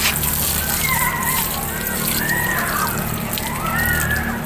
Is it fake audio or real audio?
real